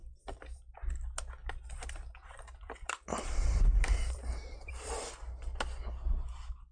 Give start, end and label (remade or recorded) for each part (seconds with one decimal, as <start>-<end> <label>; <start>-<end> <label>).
0.0-0.6 remade; 0.6-1.4 recorded; 1.4-5.0 remade; 5.0-6.7 recorded